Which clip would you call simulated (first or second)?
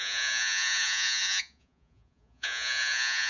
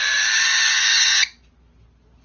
first